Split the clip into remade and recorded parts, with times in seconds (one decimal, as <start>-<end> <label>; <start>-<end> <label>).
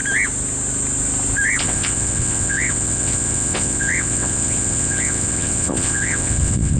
0.0-1.6 recorded; 1.6-6.8 remade